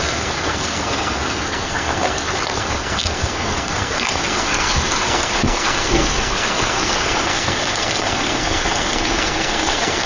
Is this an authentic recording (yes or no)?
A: no